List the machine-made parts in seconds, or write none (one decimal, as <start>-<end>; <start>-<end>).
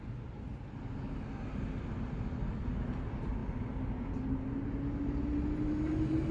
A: none